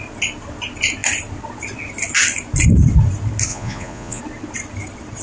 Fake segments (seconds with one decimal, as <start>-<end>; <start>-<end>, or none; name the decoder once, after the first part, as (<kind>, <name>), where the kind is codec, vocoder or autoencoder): 3.5-4.2 (vocoder, Vocos)